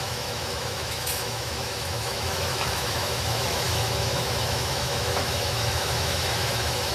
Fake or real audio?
fake